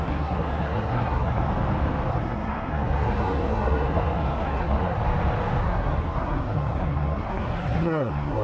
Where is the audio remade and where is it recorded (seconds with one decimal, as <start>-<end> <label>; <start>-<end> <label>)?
0.0-1.5 remade; 1.5-2.1 recorded; 2.1-5.0 remade; 5.0-5.6 recorded; 5.6-8.4 remade